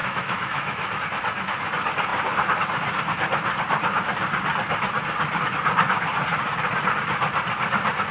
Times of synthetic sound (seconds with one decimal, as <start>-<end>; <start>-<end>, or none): 0.0-1.0